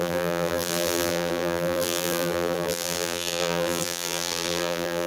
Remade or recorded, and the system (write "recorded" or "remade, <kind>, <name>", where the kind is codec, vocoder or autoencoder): remade, vocoder, BigVGAN v2